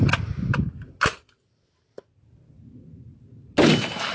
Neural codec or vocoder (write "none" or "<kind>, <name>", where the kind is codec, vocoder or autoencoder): none